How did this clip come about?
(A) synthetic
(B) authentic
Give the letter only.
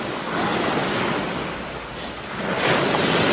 B